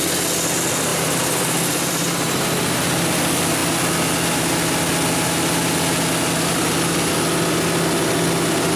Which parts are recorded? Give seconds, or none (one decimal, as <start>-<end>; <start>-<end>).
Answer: 0.0-0.9; 2.4-8.8